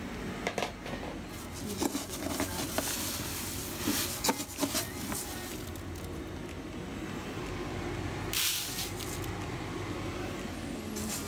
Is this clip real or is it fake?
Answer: real